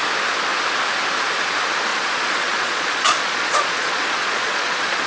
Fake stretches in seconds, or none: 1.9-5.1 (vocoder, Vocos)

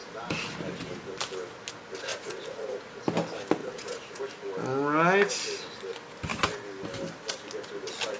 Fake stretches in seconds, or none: 2.1-3.0 (vocoder, Vocos); 3.6-4.2

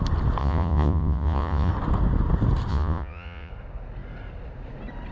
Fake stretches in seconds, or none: 0.4-1.7 (vocoder, Vocos); 2.7-3.5

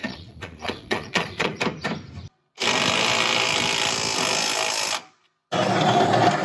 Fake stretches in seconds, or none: 0.0-1.6 (vocoder, Vocos)

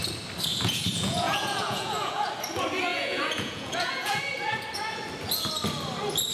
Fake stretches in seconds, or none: 0.5-2.3 (vocoder, Vocos); 2.9-4.2